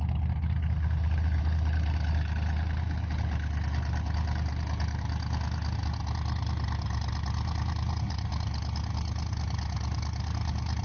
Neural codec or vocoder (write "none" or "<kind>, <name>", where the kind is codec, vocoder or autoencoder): none